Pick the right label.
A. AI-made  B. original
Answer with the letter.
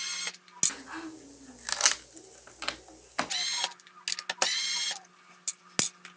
B